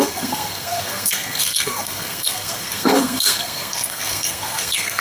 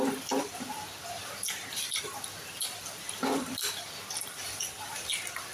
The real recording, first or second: second